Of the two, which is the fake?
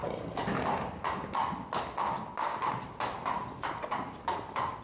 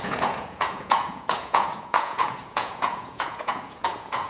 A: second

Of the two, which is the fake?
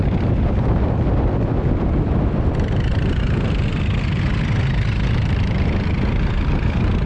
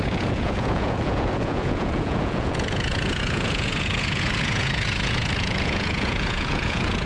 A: second